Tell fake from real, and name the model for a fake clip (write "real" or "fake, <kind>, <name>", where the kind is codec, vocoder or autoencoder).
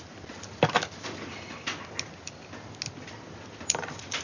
real